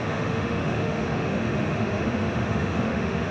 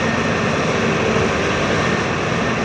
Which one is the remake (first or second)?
first